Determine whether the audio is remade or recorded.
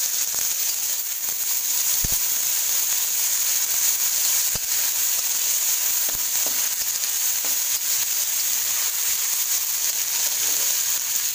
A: recorded